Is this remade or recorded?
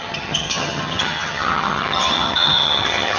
remade